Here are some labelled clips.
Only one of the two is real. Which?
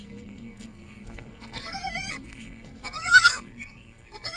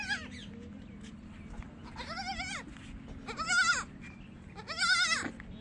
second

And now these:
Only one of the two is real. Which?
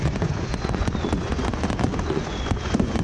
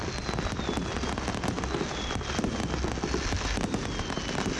second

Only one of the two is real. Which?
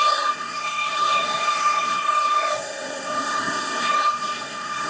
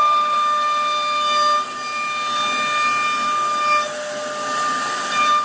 second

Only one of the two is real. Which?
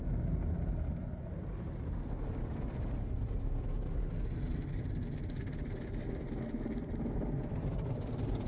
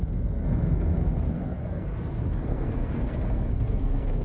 first